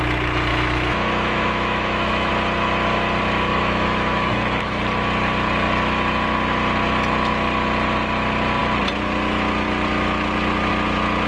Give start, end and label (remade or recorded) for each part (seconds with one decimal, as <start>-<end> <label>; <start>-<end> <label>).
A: 0.0-0.5 recorded; 0.5-2.3 remade; 2.3-3.5 recorded; 3.5-4.8 remade; 4.8-11.3 recorded